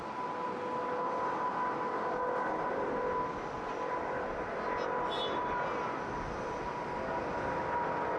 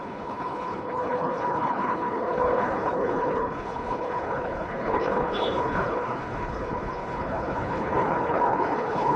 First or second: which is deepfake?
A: second